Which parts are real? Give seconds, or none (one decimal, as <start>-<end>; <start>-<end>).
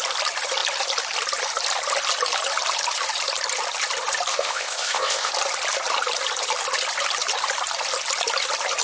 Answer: 0.0-4.3; 5.3-8.8